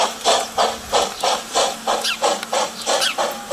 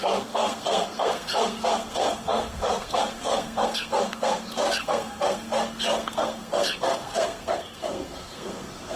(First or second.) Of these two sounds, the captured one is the first